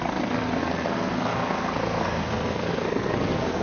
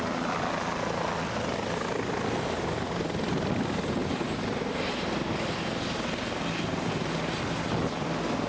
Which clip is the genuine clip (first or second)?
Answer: second